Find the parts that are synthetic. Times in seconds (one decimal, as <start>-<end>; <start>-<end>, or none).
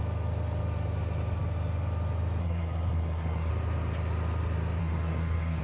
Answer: 2.4-3.5; 4.8-5.6